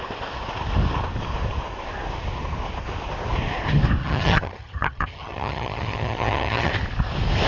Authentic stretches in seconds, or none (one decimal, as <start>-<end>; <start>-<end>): 0.0-4.0; 6.7-7.5

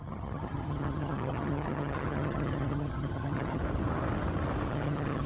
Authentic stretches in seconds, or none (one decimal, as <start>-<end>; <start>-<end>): 3.6-4.7

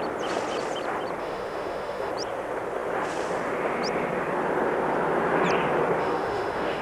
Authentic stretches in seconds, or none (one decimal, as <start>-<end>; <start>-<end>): 0.0-1.2; 2.1-6.0

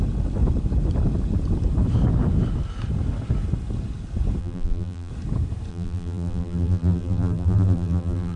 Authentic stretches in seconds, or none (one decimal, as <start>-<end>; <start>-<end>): 0.0-4.4; 5.1-5.7